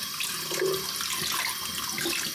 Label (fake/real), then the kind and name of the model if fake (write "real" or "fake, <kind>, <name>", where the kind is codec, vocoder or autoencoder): real